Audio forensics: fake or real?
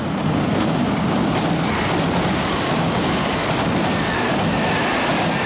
real